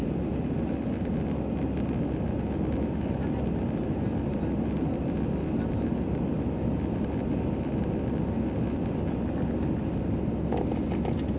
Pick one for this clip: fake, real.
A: real